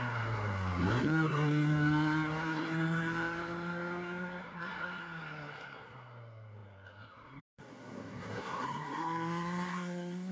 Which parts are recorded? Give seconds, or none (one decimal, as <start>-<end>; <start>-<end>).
none

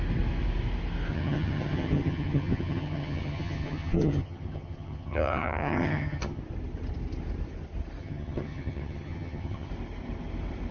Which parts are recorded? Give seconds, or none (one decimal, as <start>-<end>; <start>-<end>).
0.0-1.1; 6.4-8.0; 9.7-10.7

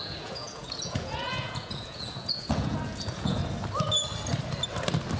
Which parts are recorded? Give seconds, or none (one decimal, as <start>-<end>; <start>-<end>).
3.4-5.2

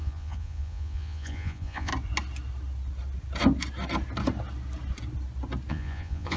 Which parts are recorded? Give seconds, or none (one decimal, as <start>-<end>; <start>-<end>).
1.9-5.7